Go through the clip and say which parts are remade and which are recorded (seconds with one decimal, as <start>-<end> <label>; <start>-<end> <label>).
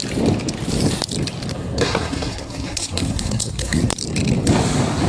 0.0-1.5 recorded; 1.5-3.8 remade; 3.8-5.1 recorded